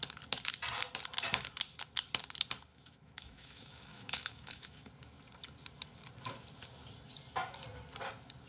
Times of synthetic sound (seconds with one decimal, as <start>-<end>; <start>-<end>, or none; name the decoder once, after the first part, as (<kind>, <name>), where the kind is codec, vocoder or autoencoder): 2.7-4.9 (autoencoder, DAC-VAE)